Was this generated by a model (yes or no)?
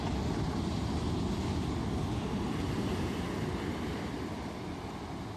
no